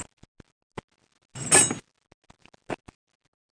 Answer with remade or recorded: recorded